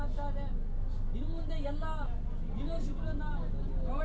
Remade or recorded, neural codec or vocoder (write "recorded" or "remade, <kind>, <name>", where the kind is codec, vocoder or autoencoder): recorded